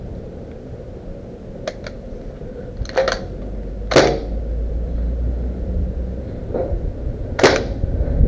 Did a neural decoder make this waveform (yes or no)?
no